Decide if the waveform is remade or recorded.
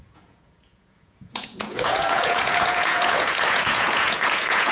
remade